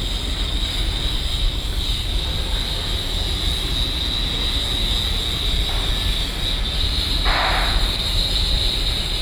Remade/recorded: recorded